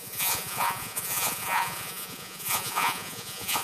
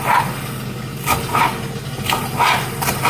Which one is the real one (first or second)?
second